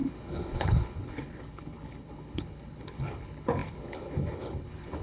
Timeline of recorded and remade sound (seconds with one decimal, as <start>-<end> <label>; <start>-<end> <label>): 0.0-5.0 remade